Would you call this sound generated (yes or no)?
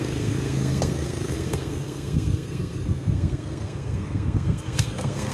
yes